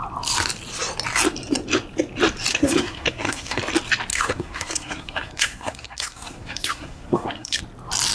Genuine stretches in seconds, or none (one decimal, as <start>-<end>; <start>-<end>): 0.0-2.5; 3.6-4.1; 7.6-8.1